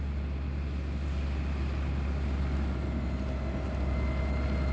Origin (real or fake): real